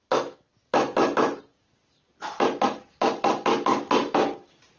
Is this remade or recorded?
recorded